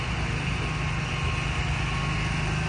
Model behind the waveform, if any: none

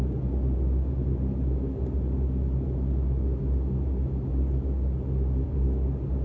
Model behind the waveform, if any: none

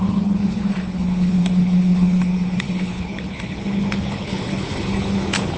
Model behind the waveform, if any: codec, HILCodec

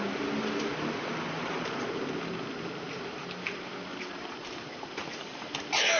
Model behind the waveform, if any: none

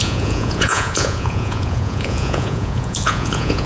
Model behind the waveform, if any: vocoder, Vocos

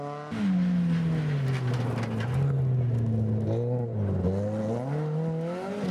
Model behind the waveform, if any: none